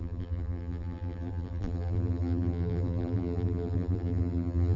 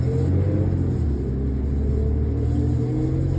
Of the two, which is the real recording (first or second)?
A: second